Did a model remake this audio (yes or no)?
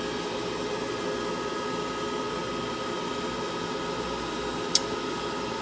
no